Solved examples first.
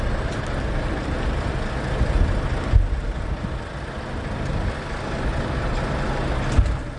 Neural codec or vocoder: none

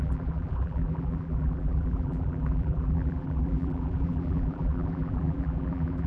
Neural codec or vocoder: vocoder, BigVGAN v2